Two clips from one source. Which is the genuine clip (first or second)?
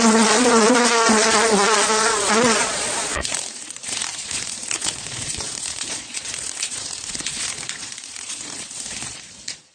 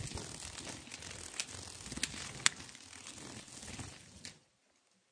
second